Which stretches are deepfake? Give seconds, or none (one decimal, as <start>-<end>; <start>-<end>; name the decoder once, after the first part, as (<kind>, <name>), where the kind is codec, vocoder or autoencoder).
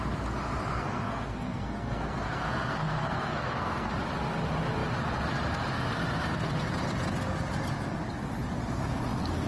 0.7-3.9 (codec, SNAC)